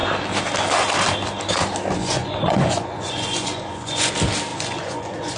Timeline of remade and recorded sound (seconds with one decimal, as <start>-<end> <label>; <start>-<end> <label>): 0.0-2.0 recorded; 2.0-4.1 remade; 4.1-4.5 recorded; 4.5-5.4 remade